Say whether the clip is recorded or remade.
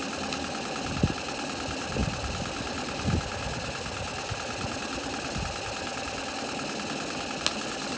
recorded